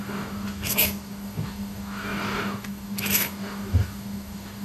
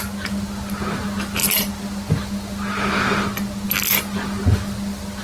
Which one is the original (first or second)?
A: second